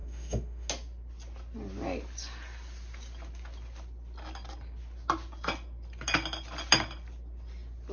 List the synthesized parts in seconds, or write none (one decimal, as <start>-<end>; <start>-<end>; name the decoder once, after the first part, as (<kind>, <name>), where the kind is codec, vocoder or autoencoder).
0.0-0.7 (autoencoder, DAC-VAE)

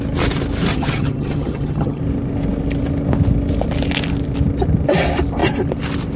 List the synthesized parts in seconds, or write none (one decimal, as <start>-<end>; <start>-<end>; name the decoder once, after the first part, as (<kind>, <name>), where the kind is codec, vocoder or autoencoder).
0.7-2.0 (vocoder, HiFi-GAN)

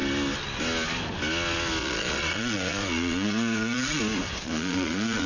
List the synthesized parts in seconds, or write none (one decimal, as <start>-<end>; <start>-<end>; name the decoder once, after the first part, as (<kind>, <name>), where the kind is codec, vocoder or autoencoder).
1.8-4.0 (vocoder, Vocos); 4.4-5.3